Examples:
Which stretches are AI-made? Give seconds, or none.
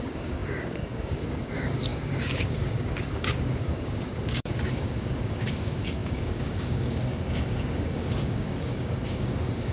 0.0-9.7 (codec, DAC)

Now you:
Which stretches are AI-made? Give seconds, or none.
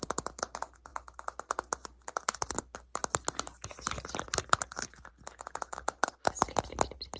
none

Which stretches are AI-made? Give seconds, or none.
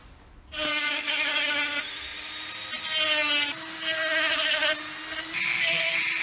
0.7-1.5 (codec, DAC)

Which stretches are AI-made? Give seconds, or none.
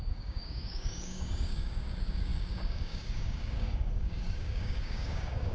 0.0-5.5 (codec, DAC)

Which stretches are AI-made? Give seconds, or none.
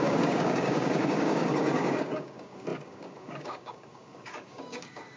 0.0-5.2 (codec, DAC)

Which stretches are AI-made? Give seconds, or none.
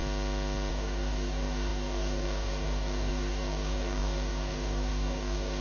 0.7-5.6 (codec, DAC)